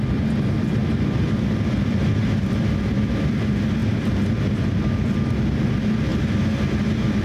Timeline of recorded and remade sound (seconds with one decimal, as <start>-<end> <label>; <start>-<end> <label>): 0.0-0.8 recorded; 0.8-3.4 remade; 3.4-6.1 recorded; 6.1-7.2 remade